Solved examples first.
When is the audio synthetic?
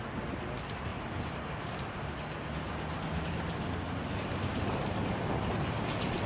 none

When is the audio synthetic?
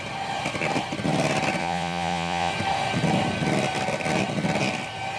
1.6-2.5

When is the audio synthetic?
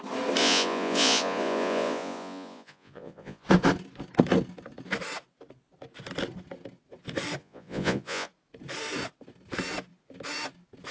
0.4-3.5; 7.4-8.3